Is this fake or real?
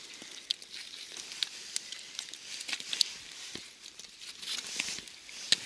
real